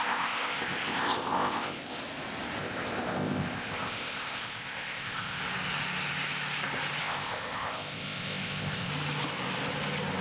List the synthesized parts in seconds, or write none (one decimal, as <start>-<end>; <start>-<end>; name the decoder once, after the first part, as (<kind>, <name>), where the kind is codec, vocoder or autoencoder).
0.0-2.0 (codec, ZipCodec); 2.6-5.4; 7.0-8.9